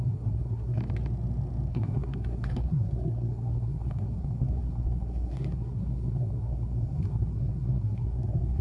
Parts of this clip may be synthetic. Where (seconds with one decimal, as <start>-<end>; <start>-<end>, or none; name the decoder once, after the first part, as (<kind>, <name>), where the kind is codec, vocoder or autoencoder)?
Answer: 0.0-0.8 (codec, SNAC); 1.7-8.6